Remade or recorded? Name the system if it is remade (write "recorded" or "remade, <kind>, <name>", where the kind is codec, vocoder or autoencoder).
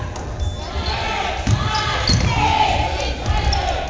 recorded